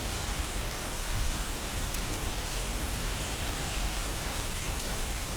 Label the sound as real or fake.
fake